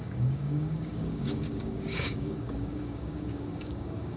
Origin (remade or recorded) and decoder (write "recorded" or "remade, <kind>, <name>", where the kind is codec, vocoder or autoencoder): remade, codec, DAC